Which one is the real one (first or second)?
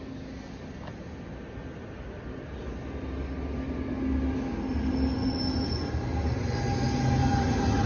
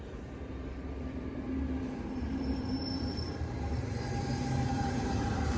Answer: first